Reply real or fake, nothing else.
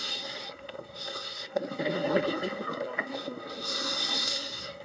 fake